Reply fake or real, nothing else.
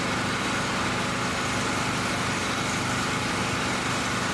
real